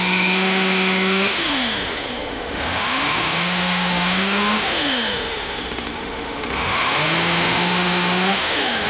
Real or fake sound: fake